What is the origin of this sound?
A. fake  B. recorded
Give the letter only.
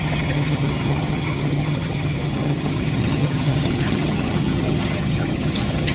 A